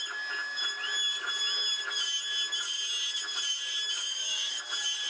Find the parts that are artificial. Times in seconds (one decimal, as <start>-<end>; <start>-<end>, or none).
4.1-4.6

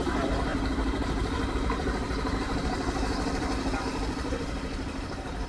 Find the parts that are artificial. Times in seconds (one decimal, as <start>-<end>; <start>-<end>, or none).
0.0-5.5

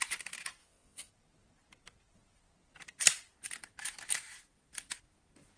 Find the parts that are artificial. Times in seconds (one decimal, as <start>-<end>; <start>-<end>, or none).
0.6-1.1

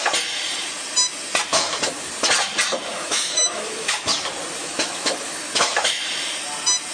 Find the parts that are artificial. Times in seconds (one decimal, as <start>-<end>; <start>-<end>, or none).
1.5-2.1; 2.9-4.1; 4.6-6.0

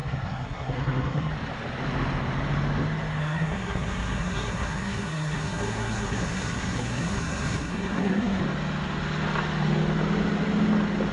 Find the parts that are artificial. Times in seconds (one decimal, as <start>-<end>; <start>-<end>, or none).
0.0-1.3; 3.2-8.4

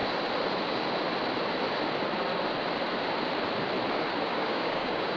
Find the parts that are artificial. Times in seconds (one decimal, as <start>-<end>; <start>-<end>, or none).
4.3-5.2

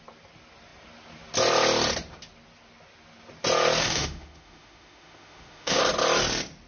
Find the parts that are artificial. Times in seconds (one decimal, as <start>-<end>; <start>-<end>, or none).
3.8-5.8